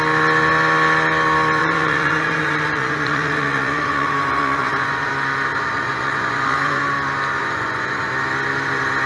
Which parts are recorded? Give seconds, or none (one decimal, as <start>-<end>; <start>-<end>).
0.0-1.6; 5.1-5.5; 6.8-7.4; 8.1-9.1